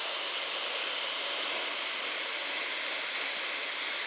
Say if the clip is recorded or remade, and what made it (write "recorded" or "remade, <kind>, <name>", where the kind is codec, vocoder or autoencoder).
remade, vocoder, BigVGAN v2